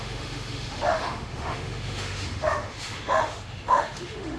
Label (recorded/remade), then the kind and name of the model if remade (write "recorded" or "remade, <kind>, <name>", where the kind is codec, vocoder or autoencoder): remade, autoencoder, DAC-VAE